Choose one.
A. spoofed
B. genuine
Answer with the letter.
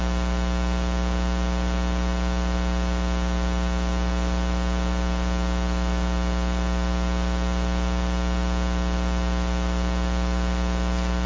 B